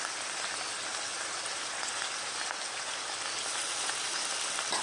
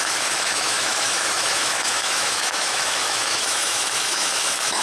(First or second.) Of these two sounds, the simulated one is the second